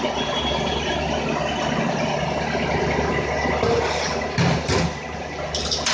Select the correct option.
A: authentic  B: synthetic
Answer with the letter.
A